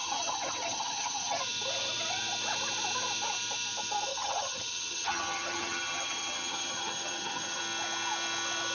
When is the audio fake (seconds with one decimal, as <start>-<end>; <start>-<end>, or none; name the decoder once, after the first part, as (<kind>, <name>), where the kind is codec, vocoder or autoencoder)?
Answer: 0.0-1.4 (vocoder, HiFi-GAN); 4.1-7.6